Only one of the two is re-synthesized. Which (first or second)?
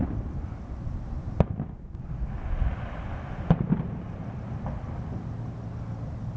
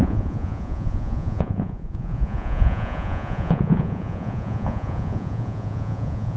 second